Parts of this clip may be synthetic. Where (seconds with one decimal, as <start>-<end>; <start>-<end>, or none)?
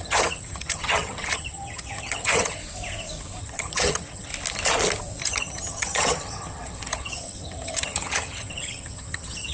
0.0-2.6; 3.4-4.3; 5.2-9.5